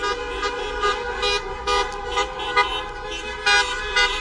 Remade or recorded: recorded